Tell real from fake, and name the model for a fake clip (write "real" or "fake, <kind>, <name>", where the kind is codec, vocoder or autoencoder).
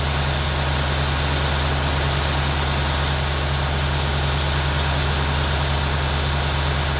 real